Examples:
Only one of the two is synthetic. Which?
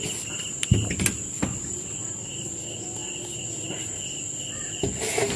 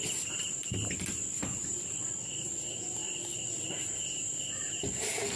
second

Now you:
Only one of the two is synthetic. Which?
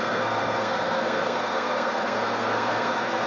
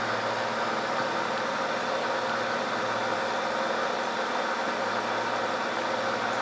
first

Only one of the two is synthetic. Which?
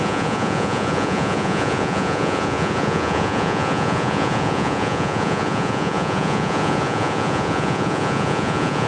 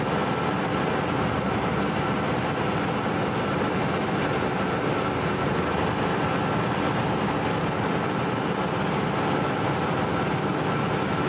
first